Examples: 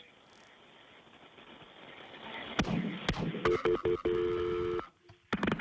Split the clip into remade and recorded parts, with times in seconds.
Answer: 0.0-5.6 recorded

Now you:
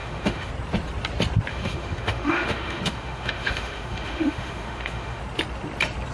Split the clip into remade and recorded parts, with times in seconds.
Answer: 0.0-0.5 remade; 0.5-1.5 recorded; 1.5-5.2 remade; 5.2-6.1 recorded

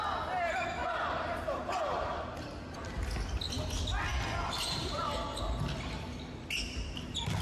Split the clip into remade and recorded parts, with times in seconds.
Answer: 0.0-7.4 recorded

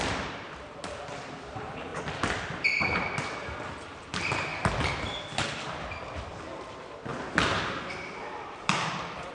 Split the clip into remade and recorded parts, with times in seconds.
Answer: 0.0-1.9 remade; 1.9-2.7 recorded; 2.7-4.5 remade; 4.5-6.0 recorded; 6.0-7.1 remade; 7.1-8.2 recorded; 8.2-9.3 remade

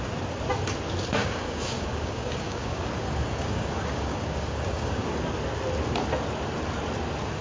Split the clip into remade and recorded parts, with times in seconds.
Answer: 0.0-1.2 recorded; 1.2-5.2 remade; 5.2-7.4 recorded

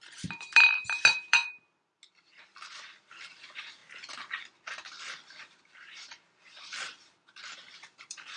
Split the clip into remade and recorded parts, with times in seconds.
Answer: 0.0-1.4 remade; 1.4-3.1 recorded; 3.1-3.8 remade; 3.8-5.4 recorded; 5.4-8.4 remade

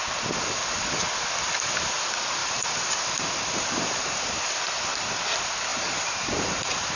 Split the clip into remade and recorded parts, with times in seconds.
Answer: 0.0-2.4 recorded; 2.4-4.5 remade; 4.5-5.7 recorded; 5.7-7.0 remade